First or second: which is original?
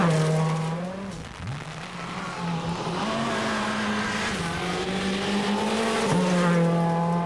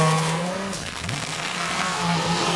first